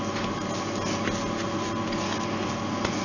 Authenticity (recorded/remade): recorded